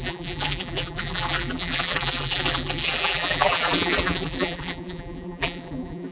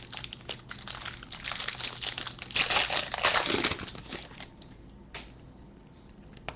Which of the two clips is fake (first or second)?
first